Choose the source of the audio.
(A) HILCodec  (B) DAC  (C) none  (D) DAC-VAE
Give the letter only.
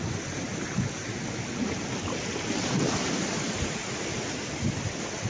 C